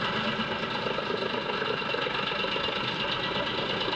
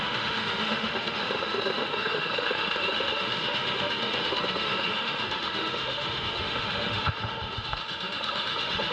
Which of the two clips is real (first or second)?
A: first